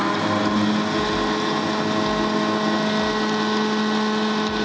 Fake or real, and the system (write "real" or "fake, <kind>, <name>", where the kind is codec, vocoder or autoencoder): real